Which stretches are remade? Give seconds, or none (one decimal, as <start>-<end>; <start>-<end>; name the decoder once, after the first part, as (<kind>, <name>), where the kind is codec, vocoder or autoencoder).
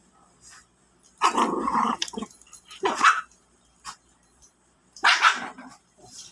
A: 1.6-6.3 (vocoder, BigVGAN v2)